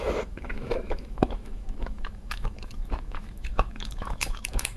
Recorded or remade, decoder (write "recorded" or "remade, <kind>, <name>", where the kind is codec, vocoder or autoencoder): remade, autoencoder, DAC-VAE